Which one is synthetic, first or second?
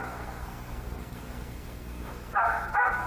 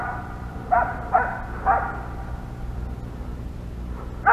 first